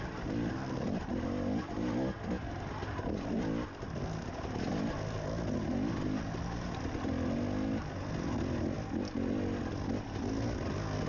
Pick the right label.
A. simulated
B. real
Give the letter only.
B